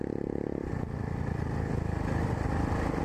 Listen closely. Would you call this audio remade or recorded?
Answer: recorded